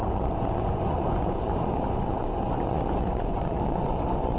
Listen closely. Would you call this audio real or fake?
fake